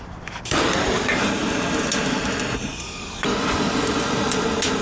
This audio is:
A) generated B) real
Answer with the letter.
A